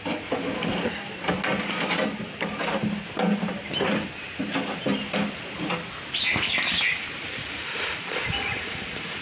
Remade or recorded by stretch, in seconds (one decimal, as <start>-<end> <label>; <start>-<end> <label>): 0.0-7.4 recorded; 7.4-9.2 remade